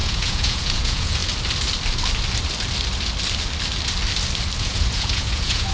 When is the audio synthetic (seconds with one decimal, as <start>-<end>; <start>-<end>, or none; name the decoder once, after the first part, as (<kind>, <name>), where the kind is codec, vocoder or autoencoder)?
0.0-1.2 (vocoder, Vocos); 4.6-5.7